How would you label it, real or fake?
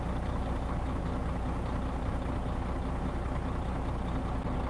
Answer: real